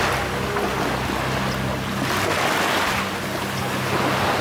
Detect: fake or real real